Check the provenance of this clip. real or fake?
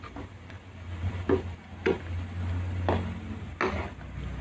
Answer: real